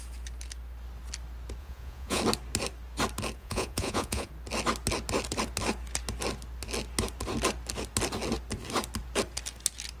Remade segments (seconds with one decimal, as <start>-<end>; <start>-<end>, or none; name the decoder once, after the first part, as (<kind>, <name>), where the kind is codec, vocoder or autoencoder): 1.6-2.2 (vocoder, Vocos); 3.4-4.3